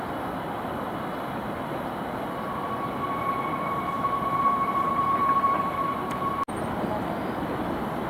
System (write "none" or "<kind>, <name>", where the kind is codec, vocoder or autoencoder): none